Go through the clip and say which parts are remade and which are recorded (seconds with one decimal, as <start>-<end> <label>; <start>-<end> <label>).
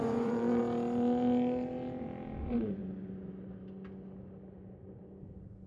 0.0-0.6 remade; 0.6-2.4 recorded; 2.4-2.8 remade; 2.8-5.7 recorded